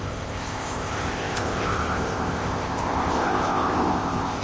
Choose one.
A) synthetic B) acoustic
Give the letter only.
A